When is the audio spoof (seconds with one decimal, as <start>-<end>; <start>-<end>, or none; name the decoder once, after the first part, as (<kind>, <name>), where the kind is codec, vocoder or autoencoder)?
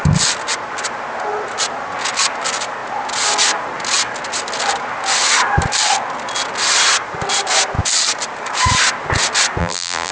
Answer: 9.6-10.1 (vocoder, BigVGAN v2)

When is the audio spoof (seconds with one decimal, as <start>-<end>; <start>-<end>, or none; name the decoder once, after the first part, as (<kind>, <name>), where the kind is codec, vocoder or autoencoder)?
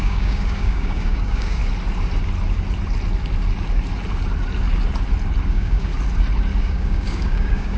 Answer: 0.0-1.6 (codec, DAC); 5.5-5.9; 6.6-7.8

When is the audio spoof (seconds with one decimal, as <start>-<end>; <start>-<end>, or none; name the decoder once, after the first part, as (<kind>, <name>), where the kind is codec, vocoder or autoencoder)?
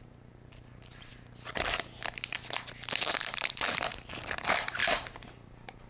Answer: 0.0-1.1 (vocoder, BigVGAN v2); 3.1-5.9